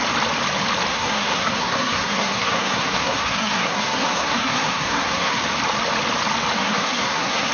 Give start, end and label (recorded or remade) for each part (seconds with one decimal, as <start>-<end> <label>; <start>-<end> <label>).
0.0-0.9 recorded; 0.9-5.4 remade; 5.4-6.6 recorded; 6.6-7.5 remade